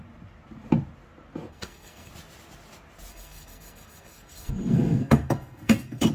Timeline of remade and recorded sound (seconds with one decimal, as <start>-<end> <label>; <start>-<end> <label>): 0.0-1.5 recorded; 1.5-2.1 remade; 2.1-3.1 recorded; 3.1-6.1 remade